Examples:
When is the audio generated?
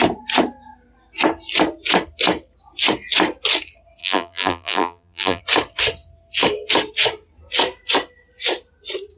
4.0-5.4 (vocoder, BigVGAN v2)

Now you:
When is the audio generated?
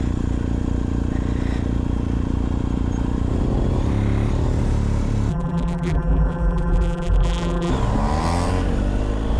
5.3-7.7 (vocoder, BigVGAN v2)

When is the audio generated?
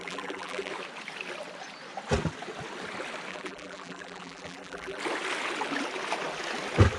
0.0-0.7 (vocoder, BigVGAN v2); 3.3-5.0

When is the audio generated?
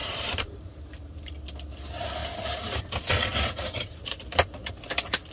0.0-1.3 (vocoder, BigVGAN v2); 2.2-2.8; 3.3-4.2